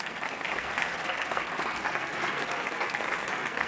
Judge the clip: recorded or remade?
remade